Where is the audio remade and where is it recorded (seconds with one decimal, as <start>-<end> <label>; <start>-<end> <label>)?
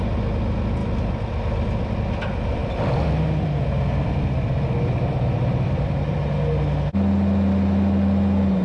0.0-0.8 recorded; 0.8-2.0 remade; 2.0-2.6 recorded; 2.6-6.0 remade; 6.0-8.6 recorded